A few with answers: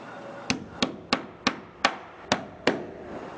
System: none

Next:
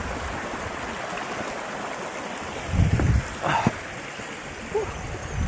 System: none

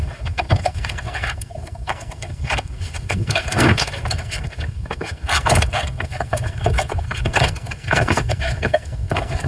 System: codec, SNAC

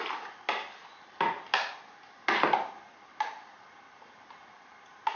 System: none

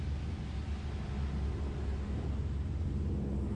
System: none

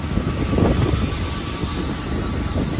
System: none